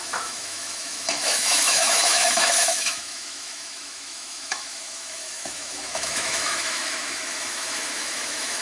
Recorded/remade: remade